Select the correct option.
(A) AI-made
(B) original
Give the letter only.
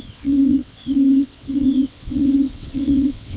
A